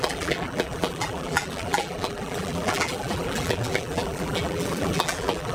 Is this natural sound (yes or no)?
no